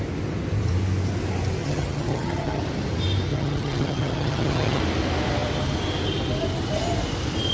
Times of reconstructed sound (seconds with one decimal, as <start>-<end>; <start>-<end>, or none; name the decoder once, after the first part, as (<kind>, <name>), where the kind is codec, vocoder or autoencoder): 1.6-2.6 (vocoder, HiFi-GAN); 3.3-4.8

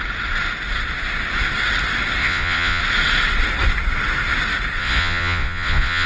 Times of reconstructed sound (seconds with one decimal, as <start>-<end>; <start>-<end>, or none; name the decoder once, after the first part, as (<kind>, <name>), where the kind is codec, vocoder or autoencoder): 2.2-2.8 (vocoder, Vocos); 4.8-6.1

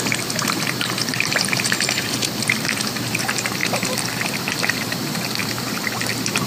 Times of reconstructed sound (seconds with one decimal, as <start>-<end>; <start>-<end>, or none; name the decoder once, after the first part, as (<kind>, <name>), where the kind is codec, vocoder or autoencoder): 0.0-3.6 (vocoder, BigVGAN v2); 4.4-6.5